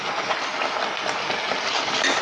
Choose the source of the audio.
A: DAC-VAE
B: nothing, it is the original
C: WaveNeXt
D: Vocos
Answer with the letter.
B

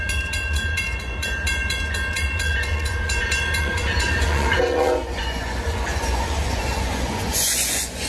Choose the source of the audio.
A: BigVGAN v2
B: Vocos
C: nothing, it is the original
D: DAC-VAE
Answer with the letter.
B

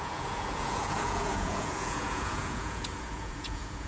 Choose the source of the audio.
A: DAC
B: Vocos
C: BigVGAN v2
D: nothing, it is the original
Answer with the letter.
B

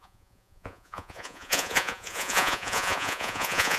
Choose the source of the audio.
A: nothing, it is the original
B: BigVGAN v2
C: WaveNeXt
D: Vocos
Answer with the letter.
D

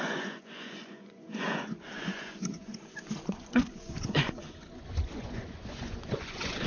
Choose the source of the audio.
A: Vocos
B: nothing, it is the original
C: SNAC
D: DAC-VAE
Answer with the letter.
A